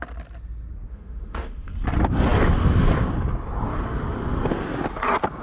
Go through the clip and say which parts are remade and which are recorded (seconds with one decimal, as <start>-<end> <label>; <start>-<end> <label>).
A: 0.0-0.9 recorded; 0.9-1.7 remade; 1.7-5.4 recorded